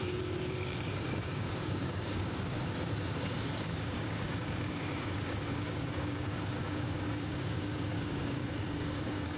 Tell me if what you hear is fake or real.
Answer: fake